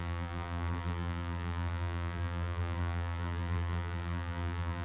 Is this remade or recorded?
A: remade